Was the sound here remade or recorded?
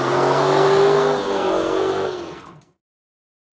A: remade